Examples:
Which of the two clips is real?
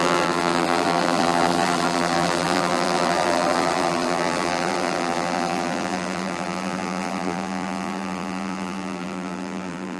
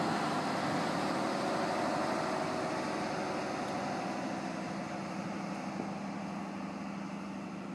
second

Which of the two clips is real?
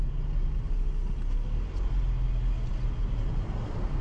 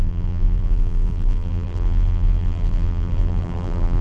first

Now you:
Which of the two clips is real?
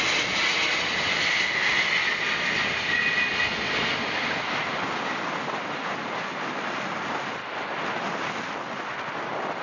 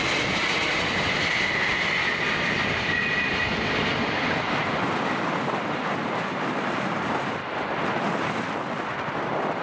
first